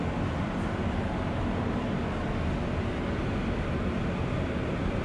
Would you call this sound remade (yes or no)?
no